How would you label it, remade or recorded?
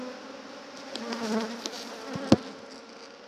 recorded